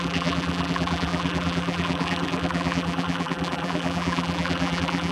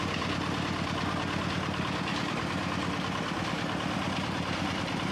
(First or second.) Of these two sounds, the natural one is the second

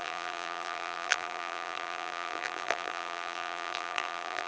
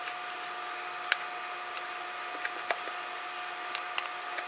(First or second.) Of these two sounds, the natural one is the second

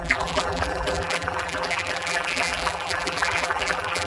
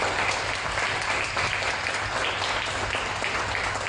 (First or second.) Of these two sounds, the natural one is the second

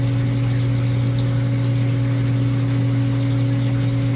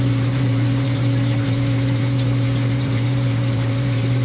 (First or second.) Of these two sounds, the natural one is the first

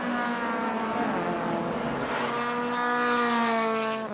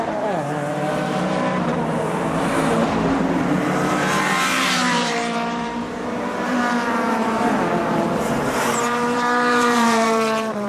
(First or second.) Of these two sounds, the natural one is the first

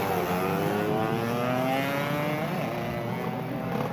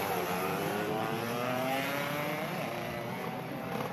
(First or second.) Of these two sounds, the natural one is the first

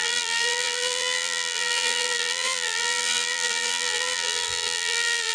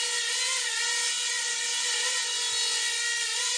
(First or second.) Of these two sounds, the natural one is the second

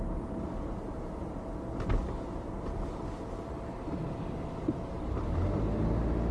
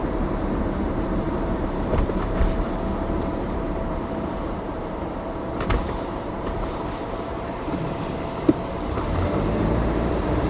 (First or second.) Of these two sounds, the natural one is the first